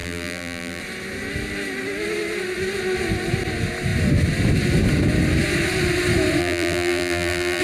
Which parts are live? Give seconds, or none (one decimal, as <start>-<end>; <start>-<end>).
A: 0.8-6.4